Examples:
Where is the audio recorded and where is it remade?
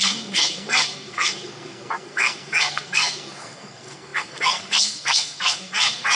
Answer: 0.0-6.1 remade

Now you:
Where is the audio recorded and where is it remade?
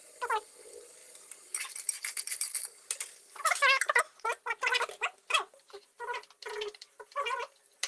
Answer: 0.0-7.9 recorded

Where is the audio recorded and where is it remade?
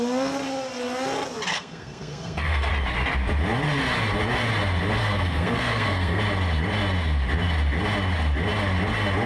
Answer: 0.0-1.5 recorded; 1.5-2.7 remade; 2.7-5.0 recorded; 5.0-6.2 remade; 6.2-9.3 recorded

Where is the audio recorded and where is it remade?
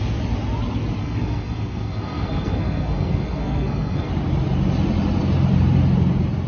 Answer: 0.0-1.0 recorded; 1.0-4.1 remade; 4.1-6.5 recorded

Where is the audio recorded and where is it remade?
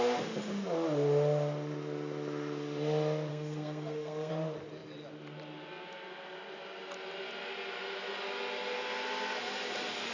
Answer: 0.0-3.3 recorded; 3.3-4.3 remade; 4.3-10.1 recorded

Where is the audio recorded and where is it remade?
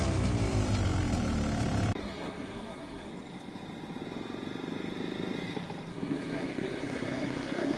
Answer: 0.0-2.0 recorded; 2.0-3.1 remade; 3.1-5.9 recorded; 5.9-7.8 remade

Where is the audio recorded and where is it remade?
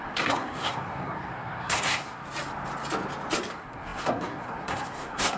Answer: 0.0-2.2 remade; 2.2-3.5 recorded; 3.5-5.4 remade